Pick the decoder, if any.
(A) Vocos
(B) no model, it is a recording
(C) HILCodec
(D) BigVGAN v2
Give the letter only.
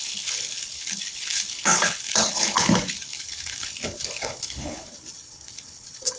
C